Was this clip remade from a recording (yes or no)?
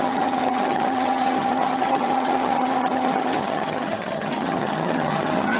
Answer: yes